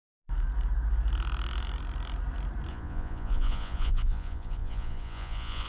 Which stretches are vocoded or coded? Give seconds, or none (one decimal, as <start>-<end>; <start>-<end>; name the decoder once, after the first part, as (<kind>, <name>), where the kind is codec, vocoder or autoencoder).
2.7-5.7 (vocoder, Vocos)